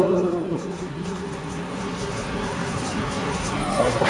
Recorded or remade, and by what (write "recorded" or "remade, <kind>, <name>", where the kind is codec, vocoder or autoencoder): remade, codec, SNAC